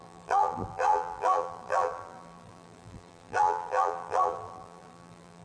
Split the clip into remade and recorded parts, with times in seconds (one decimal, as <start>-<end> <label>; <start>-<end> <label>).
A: 0.0-5.4 remade